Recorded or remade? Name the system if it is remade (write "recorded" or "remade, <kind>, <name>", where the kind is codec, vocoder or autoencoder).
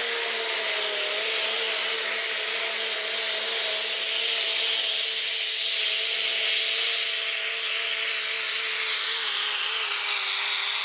recorded